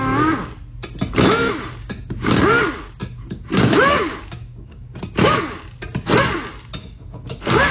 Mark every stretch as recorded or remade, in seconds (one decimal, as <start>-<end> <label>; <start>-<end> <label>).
0.0-1.8 recorded; 1.8-2.5 remade; 2.5-3.0 recorded; 3.0-5.4 remade; 5.4-6.8 recorded; 6.8-7.7 remade